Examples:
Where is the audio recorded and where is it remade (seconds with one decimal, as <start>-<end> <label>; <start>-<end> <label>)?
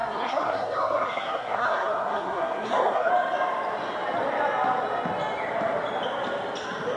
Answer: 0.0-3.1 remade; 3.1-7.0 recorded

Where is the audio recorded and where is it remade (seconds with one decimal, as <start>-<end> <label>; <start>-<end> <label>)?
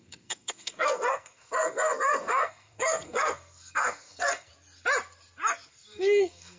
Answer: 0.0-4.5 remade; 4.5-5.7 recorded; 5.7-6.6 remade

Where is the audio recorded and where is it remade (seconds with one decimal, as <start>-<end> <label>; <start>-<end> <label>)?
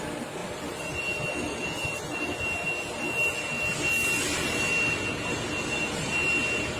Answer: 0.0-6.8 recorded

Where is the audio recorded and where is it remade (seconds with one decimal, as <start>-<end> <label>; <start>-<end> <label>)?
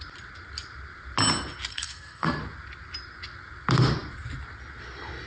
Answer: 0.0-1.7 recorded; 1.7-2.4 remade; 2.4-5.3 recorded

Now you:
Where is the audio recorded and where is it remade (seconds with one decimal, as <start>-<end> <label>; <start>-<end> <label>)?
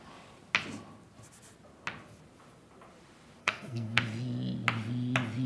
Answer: 0.0-3.4 recorded; 3.4-4.0 remade; 4.0-5.5 recorded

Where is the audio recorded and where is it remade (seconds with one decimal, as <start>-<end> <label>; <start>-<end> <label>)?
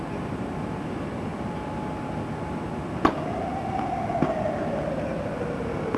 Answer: 0.0-6.0 recorded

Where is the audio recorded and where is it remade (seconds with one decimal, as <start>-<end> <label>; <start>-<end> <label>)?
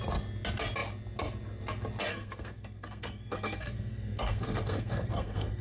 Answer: 0.0-2.1 recorded; 2.1-5.6 remade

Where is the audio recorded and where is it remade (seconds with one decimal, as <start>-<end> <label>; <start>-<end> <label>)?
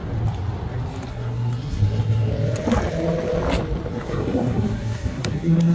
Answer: 0.0-1.1 recorded; 1.1-2.3 remade; 2.3-3.9 recorded; 3.9-5.7 remade